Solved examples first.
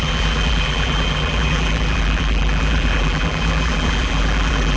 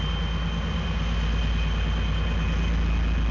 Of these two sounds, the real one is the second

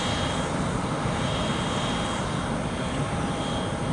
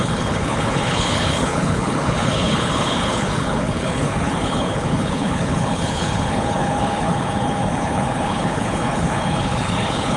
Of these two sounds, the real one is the first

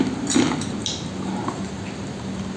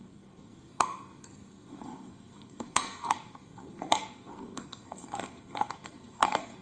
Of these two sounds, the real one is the first